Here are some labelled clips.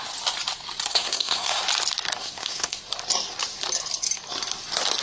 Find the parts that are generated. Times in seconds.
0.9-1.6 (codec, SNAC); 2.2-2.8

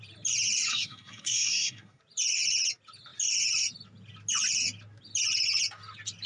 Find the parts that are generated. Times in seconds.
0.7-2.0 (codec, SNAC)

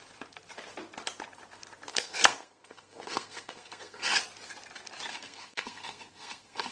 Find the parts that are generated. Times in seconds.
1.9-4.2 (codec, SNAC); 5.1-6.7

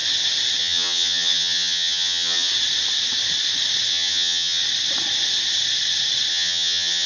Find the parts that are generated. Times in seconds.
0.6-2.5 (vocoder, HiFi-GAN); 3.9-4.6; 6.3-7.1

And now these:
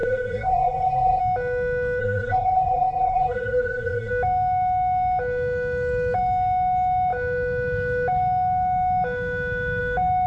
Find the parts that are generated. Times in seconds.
0.0-1.2 (codec, SNAC); 2.0-4.1

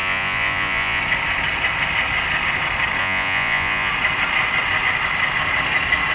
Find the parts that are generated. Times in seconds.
0.0-1.0 (vocoder, Vocos); 3.0-3.9

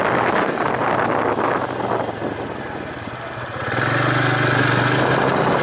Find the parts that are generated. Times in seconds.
none

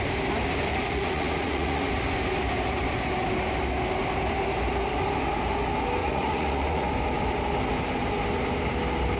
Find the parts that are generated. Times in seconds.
0.7-1.9 (vocoder, Vocos); 6.0-6.9